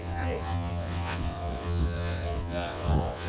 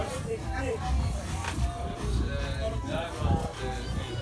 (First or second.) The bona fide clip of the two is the second